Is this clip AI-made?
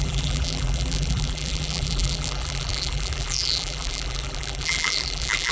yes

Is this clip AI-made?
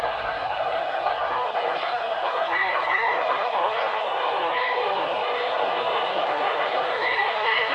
yes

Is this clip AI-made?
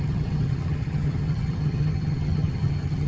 yes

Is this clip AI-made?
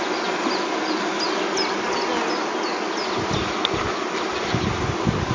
no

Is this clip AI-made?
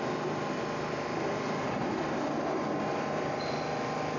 no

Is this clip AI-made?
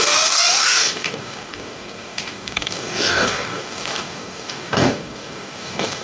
yes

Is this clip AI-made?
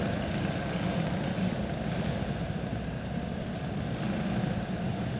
no